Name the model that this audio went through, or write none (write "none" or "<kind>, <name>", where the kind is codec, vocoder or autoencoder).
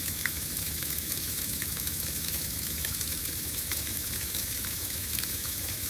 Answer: autoencoder, DAC-VAE